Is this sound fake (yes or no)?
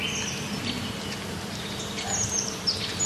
no